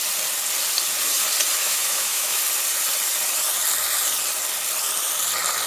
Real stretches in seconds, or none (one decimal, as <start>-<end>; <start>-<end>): 0.0-1.6; 2.4-5.7